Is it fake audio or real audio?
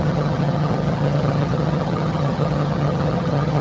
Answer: fake